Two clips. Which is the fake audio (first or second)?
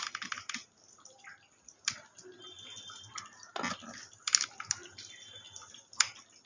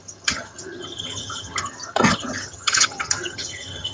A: second